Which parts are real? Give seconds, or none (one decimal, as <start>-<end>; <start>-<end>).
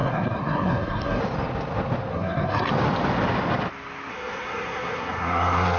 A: 1.2-2.1; 2.7-4.1